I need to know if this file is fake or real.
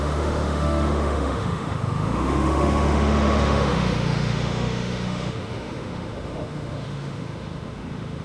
fake